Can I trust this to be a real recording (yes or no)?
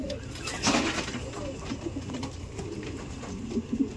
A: yes